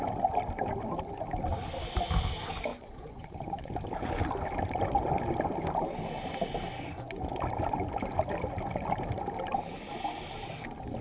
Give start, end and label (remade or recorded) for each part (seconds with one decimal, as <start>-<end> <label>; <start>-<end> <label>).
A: 0.0-2.7 recorded; 2.7-3.7 remade; 3.7-11.0 recorded